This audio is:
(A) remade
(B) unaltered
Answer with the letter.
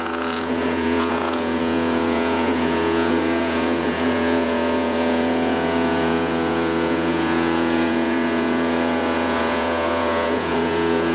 A